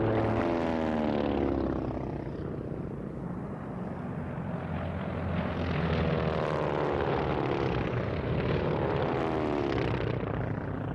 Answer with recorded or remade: recorded